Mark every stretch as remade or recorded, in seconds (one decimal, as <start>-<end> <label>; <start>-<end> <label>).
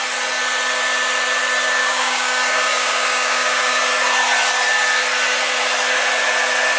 0.0-1.8 recorded; 1.8-3.9 remade; 3.9-6.8 recorded